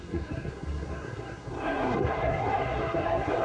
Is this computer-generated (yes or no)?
yes